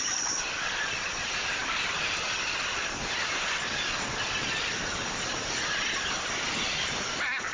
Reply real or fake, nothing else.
real